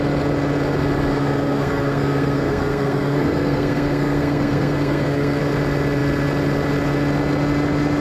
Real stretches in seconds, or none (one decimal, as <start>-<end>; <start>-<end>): 0.0-1.1; 5.4-8.0

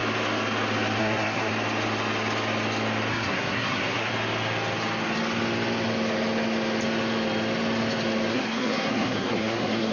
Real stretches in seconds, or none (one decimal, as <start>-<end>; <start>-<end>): 0.0-1.0; 1.5-3.1; 4.1-8.3

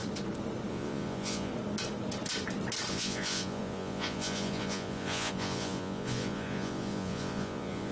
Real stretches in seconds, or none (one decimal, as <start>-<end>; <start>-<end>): 0.0-0.7; 1.5-2.9

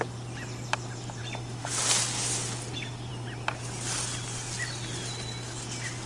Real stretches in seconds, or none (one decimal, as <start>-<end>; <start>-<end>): 0.0-6.1

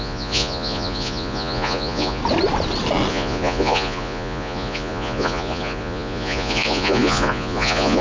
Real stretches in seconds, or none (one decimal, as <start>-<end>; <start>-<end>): 2.2-3.1

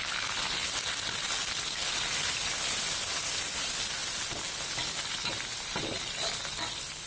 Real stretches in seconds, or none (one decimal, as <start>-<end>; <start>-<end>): 0.0-7.1